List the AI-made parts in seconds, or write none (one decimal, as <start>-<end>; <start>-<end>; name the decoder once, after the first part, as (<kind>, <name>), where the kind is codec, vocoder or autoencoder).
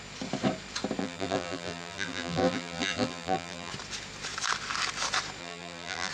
1.0-3.7 (vocoder, BigVGAN v2); 5.4-6.1